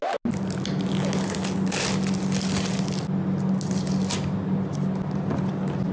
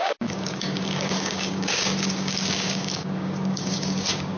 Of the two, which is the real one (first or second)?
first